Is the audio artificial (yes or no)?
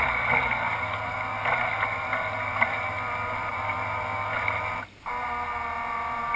no